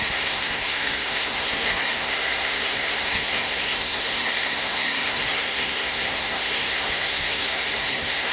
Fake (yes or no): yes